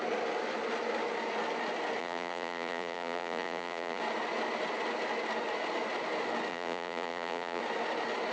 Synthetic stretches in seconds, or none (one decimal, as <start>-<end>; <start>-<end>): 2.0-4.0; 6.5-7.6

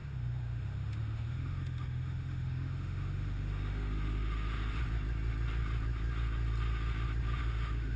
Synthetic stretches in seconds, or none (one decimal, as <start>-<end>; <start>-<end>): 0.0-4.8; 7.4-8.0

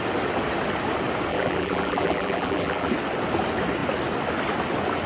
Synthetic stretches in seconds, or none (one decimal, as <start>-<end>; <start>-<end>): 1.3-2.9